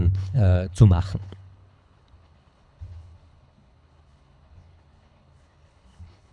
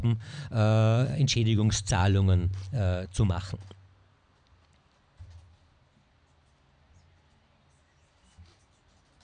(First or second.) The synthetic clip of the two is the first